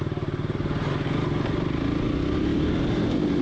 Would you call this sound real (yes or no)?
yes